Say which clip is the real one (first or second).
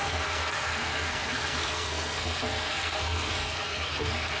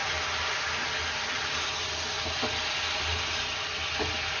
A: second